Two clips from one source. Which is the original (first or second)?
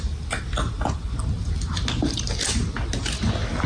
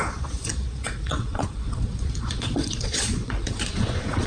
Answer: first